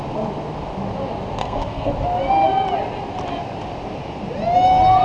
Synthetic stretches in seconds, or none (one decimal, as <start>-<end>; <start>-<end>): 1.4-1.9